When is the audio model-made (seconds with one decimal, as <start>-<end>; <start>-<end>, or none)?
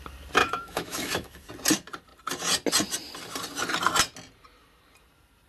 0.4-1.5